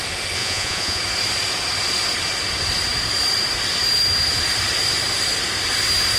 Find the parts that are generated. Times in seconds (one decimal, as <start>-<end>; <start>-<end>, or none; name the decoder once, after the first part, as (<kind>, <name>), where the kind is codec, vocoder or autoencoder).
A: 0.4-1.0 (vocoder, Vocos)